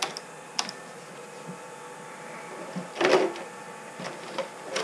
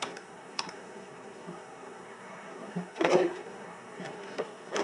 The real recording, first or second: first